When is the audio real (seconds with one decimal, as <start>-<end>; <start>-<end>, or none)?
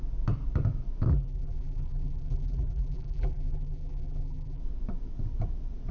0.0-1.1; 4.6-5.9